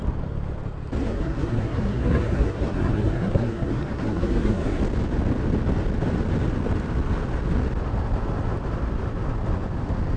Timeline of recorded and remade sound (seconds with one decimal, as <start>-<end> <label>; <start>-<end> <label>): 0.0-1.0 recorded; 1.0-4.8 remade; 4.8-10.2 recorded